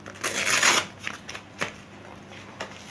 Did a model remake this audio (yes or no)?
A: no